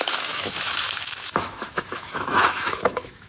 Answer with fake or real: fake